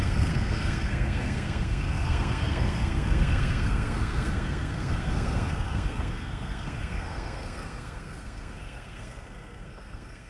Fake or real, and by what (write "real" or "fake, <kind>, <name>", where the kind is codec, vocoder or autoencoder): fake, codec, SNAC